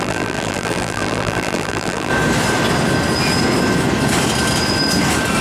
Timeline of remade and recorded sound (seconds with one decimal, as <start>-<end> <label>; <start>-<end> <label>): 0.0-2.1 remade; 2.1-5.4 recorded